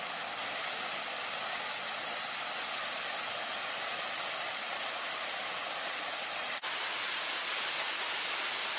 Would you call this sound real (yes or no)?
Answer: yes